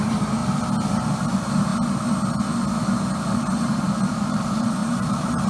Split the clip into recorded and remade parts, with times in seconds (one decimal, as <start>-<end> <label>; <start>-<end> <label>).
0.0-0.4 remade; 0.4-1.1 recorded; 1.1-1.7 remade; 1.7-3.1 recorded; 3.1-5.5 remade